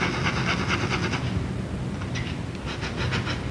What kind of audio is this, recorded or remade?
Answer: recorded